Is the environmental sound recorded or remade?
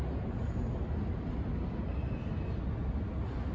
recorded